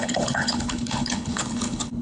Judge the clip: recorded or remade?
remade